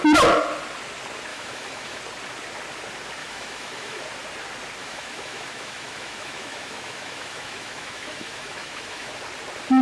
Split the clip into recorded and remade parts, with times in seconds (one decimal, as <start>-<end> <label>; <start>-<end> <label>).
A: 0.0-1.3 recorded; 1.3-2.0 remade; 2.0-3.2 recorded; 3.2-4.0 remade; 4.0-4.8 recorded; 4.8-9.1 remade; 9.1-9.8 recorded